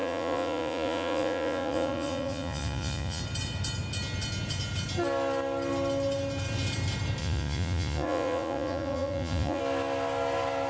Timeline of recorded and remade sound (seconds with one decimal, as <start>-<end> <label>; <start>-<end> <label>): 0.0-3.2 remade; 3.2-7.2 recorded; 7.2-9.6 remade; 9.6-10.7 recorded